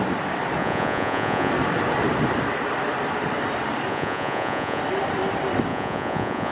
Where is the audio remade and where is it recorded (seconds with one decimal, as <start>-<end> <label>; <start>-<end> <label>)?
0.0-0.6 recorded; 0.6-1.5 remade; 1.5-3.9 recorded; 3.9-4.8 remade; 4.8-5.7 recorded; 5.7-6.5 remade